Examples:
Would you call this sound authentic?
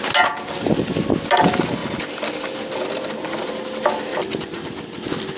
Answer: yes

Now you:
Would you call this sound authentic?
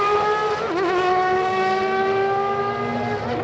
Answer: yes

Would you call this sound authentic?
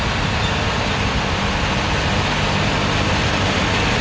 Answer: yes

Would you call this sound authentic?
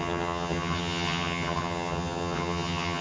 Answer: no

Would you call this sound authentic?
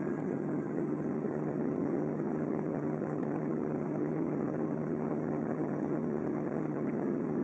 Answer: no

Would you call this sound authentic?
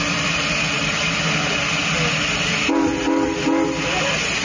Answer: yes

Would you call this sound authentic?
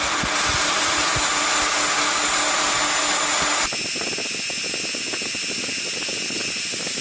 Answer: yes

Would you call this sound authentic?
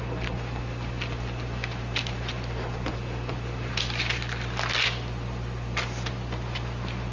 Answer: yes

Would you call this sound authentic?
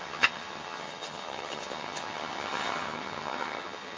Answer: no